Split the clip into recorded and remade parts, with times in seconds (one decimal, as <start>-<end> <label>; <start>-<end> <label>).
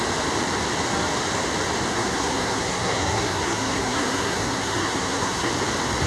0.0-1.9 recorded; 1.9-5.5 remade; 5.5-6.1 recorded